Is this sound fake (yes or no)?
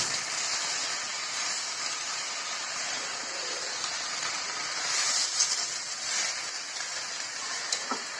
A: no